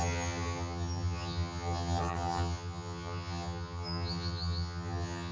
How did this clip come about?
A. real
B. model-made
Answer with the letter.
B